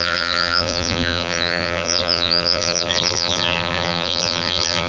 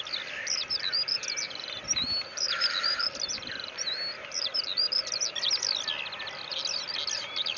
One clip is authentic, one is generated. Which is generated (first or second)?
first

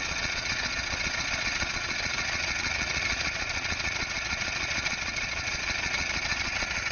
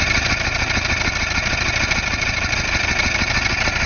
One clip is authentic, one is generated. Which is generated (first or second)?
first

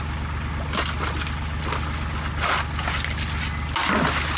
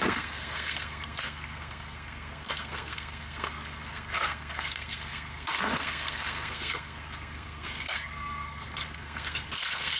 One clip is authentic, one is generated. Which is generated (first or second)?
second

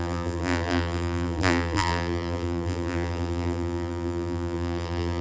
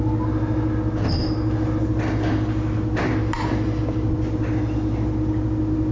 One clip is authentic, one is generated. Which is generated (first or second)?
first